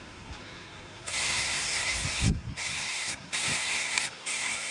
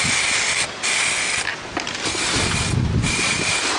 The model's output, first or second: first